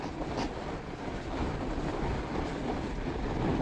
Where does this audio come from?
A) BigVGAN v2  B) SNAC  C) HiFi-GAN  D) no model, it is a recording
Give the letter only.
D